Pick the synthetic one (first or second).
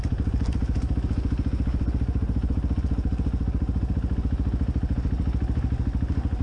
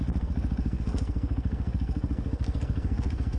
second